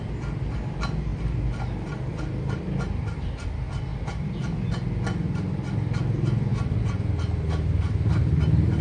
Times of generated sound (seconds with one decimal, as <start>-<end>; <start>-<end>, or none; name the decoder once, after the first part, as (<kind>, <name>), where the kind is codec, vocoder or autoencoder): none